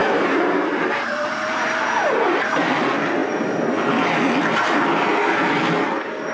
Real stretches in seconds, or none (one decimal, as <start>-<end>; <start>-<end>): 2.7-6.3